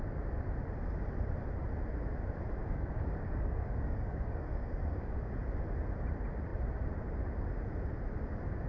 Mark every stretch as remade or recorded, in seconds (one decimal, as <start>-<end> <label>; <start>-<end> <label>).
0.0-2.6 recorded; 2.6-5.3 remade; 5.3-8.7 recorded